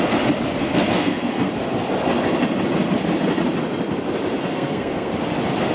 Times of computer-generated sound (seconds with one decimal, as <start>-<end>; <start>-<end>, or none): 0.6-1.5; 4.4-5.1